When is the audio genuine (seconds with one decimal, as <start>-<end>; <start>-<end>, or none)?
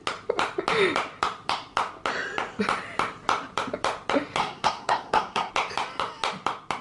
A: 0.0-4.4; 5.5-6.8